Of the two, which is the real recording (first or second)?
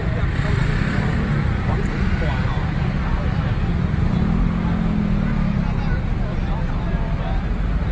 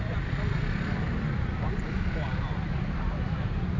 first